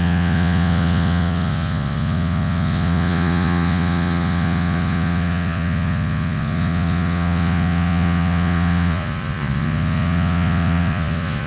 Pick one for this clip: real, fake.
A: fake